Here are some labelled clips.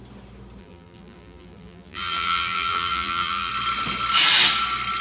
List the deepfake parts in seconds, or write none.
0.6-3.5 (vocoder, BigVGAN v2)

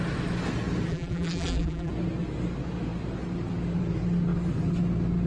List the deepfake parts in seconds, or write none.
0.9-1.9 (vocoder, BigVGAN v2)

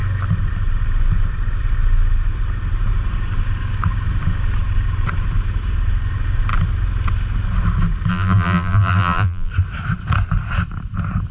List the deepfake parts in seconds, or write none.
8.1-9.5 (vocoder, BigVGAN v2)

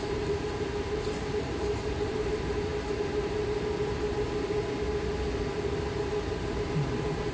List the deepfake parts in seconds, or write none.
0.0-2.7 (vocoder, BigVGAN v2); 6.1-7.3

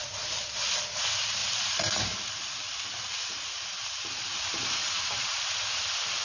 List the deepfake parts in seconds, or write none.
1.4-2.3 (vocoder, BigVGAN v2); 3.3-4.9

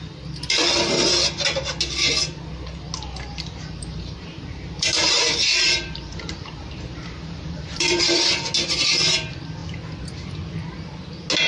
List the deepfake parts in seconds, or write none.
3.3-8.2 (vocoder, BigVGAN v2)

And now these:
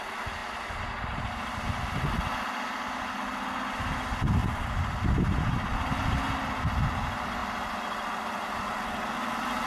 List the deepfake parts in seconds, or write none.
none